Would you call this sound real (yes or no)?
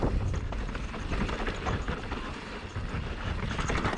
yes